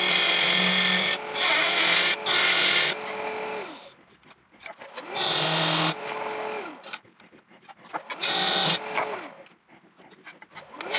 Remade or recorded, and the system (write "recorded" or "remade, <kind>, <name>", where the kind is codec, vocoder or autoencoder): recorded